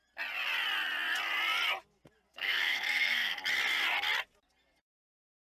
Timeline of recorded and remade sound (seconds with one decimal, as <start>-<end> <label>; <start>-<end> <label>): 0.0-2.3 recorded; 2.3-3.4 remade; 3.4-5.5 recorded